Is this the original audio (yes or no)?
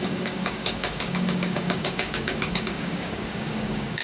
no